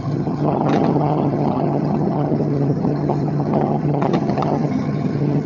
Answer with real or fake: fake